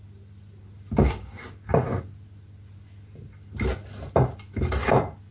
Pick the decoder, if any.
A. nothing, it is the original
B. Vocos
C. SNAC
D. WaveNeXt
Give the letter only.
A